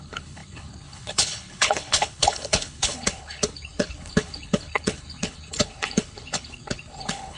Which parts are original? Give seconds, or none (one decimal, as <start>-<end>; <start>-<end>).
none